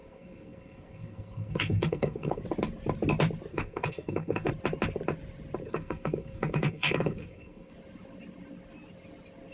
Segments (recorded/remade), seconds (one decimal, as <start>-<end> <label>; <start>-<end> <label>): 0.0-2.4 remade; 2.4-3.5 recorded; 3.5-4.5 remade; 4.5-5.6 recorded; 5.6-7.7 remade; 7.7-9.5 recorded